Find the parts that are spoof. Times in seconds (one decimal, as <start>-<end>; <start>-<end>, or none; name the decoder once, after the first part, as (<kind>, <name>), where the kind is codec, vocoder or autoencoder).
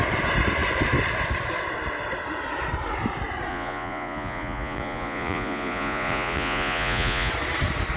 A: 3.5-7.3 (vocoder, Vocos)